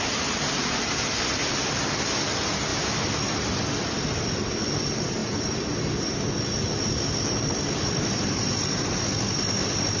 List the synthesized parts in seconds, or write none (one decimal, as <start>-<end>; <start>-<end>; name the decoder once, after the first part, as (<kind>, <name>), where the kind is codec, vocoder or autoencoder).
none